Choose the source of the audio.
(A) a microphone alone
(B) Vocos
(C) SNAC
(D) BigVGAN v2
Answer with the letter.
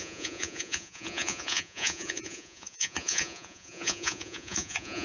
B